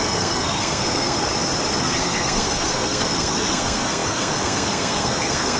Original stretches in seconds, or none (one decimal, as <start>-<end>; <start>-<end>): 1.3-1.8